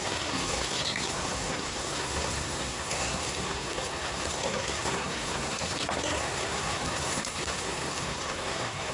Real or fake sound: fake